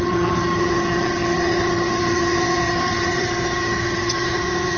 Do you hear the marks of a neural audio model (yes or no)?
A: yes